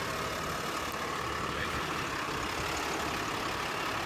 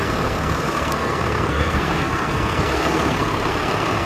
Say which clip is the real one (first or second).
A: first